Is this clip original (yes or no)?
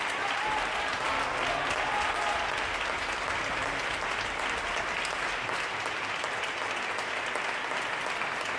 yes